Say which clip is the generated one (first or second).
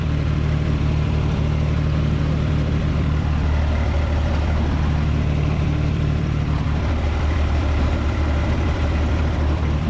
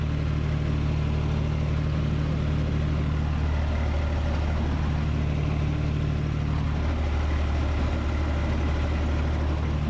first